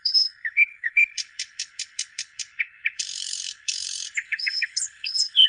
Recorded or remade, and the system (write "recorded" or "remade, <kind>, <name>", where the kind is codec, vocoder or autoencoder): remade, codec, HILCodec